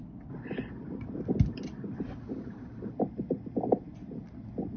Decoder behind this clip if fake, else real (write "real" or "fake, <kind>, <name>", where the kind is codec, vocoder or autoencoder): real